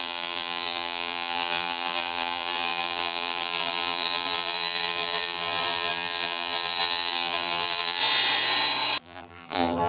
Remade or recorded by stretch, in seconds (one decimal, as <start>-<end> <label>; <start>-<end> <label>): 0.0-8.0 remade; 8.0-9.0 recorded; 9.0-9.9 remade